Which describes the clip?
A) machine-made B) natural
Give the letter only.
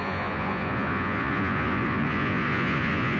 A